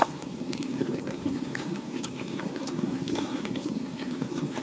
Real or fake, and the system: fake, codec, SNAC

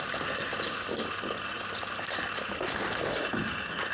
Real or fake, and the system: real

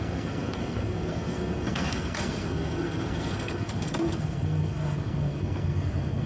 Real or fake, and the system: fake, codec, SNAC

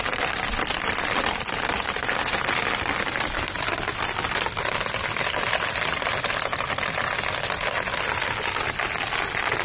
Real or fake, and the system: real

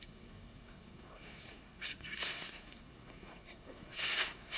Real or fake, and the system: fake, codec, SNAC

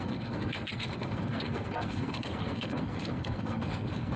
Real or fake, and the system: fake, codec, SNAC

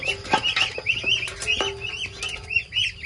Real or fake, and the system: real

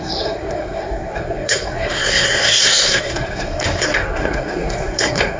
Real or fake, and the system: fake, codec, SNAC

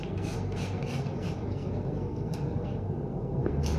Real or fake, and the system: fake, codec, SNAC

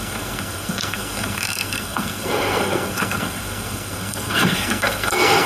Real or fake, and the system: fake, codec, SNAC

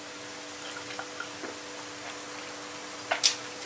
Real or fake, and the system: real